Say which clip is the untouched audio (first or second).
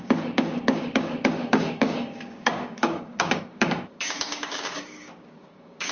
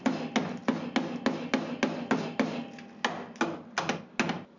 second